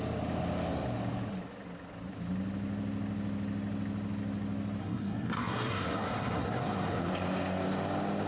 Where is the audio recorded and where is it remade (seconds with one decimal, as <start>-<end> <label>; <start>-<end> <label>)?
0.0-4.8 recorded; 4.8-7.0 remade; 7.0-8.3 recorded